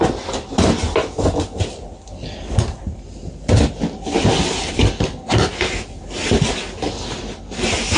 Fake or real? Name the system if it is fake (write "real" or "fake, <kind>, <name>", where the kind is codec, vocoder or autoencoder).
real